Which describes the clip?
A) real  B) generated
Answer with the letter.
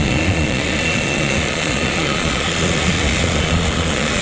B